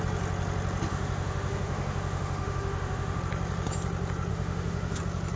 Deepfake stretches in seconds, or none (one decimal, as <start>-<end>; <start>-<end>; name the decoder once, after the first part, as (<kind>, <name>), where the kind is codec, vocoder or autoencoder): 0.9-3.2 (autoencoder, DAC-VAE); 4.3-5.0